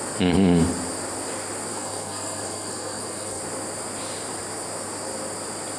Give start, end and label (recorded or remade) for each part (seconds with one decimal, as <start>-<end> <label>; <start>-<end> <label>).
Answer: 0.0-1.7 recorded; 1.7-3.4 remade; 3.4-5.8 recorded